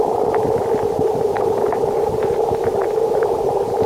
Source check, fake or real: real